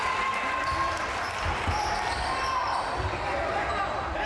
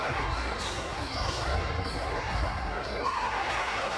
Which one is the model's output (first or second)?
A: second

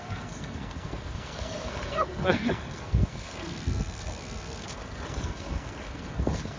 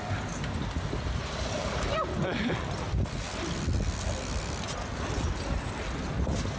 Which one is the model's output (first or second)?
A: first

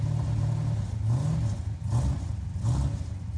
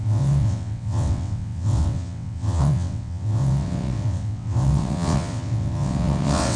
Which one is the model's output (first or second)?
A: second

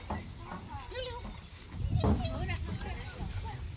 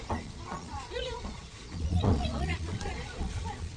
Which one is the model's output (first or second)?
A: second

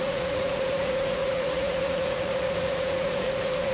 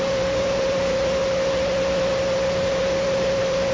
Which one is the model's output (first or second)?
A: first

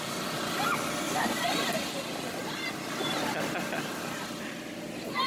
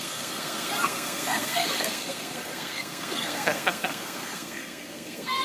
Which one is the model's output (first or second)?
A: second